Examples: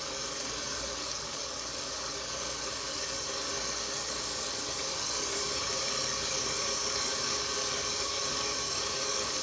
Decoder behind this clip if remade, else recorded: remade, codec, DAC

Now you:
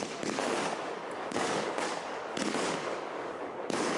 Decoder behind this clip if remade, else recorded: remade, codec, DAC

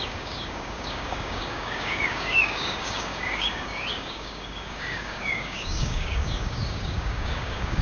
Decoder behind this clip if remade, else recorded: remade, codec, DAC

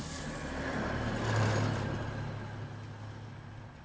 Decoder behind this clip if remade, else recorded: recorded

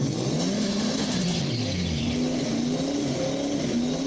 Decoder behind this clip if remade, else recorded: recorded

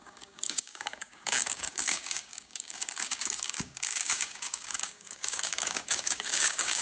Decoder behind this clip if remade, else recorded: remade, codec, DAC